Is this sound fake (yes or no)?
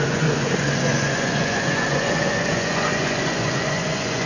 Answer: yes